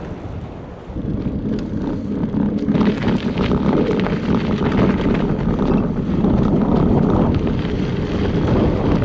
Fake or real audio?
real